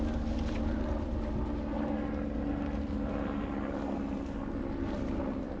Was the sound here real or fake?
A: real